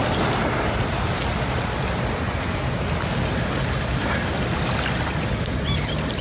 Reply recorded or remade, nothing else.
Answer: recorded